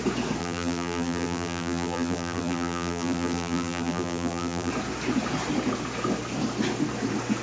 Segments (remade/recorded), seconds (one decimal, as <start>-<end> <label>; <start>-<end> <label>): 0.0-0.4 recorded; 0.4-4.7 remade; 4.7-7.4 recorded